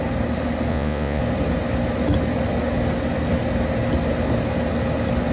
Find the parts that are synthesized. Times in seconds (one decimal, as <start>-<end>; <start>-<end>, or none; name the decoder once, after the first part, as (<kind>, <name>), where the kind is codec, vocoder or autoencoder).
0.7-1.2 (vocoder, Vocos)